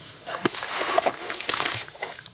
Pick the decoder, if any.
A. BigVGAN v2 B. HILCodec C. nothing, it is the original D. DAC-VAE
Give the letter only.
D